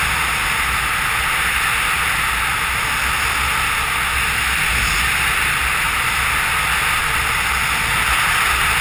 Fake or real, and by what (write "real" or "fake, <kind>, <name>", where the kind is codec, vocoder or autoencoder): real